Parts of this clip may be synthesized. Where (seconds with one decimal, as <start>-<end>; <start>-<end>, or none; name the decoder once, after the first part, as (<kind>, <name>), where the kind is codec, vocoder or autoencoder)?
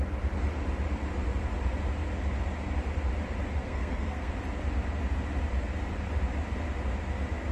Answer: 3.6-4.3 (codec, SNAC)